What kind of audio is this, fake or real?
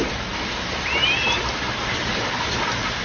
real